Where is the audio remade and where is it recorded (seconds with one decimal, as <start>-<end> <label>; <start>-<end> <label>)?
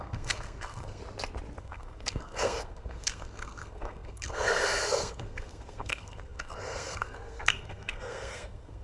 0.0-1.0 remade; 1.0-1.6 recorded; 1.6-8.8 remade